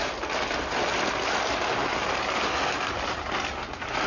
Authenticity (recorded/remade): recorded